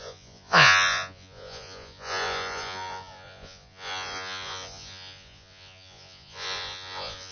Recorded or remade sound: remade